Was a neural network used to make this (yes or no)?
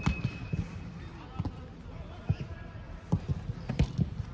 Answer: no